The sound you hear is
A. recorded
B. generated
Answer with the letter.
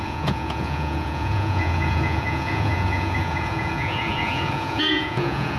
B